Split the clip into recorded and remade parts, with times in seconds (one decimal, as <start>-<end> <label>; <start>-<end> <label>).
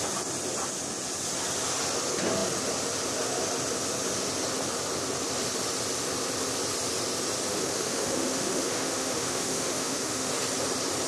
0.0-7.5 recorded; 7.5-10.3 remade; 10.3-11.1 recorded